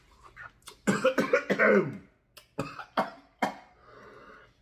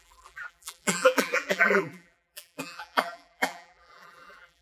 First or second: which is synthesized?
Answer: second